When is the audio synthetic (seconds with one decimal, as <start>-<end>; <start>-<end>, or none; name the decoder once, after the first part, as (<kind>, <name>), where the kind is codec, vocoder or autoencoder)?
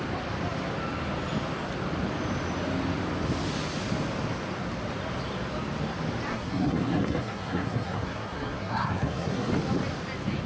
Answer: 6.3-9.5 (codec, SNAC)